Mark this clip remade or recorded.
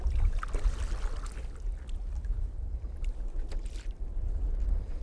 recorded